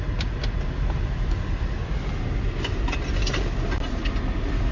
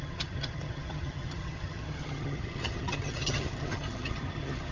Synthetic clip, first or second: second